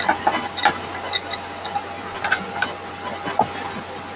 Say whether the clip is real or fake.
real